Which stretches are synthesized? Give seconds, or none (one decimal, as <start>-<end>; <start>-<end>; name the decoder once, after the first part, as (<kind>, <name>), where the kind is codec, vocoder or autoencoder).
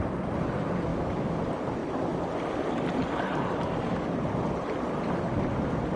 0.9-1.4 (autoencoder, DAC-VAE)